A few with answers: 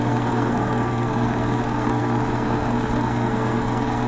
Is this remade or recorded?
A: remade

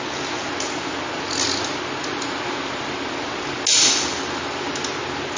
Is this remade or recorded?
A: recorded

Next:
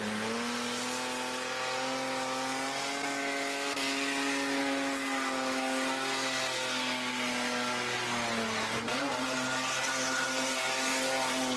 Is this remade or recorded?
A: recorded